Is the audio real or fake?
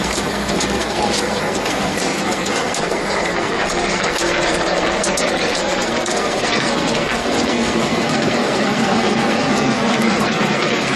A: fake